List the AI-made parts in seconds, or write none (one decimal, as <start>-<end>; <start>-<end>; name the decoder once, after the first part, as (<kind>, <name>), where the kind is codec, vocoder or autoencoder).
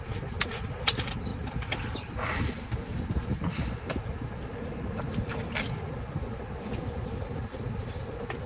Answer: none